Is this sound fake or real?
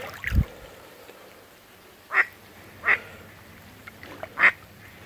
real